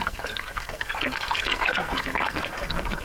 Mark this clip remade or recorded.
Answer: remade